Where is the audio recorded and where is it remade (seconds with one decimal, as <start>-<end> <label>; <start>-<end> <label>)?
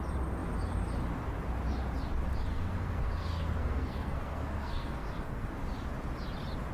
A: 0.0-2.5 recorded; 2.5-5.5 remade; 5.5-6.7 recorded